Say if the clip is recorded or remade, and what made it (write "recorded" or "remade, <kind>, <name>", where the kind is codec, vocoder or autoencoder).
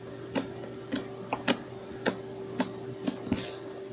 recorded